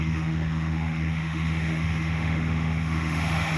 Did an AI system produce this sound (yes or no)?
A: yes